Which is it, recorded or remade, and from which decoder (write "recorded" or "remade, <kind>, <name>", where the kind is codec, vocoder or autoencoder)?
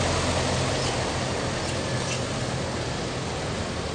remade, vocoder, BigVGAN v2